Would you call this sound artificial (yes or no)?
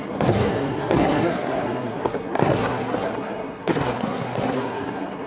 yes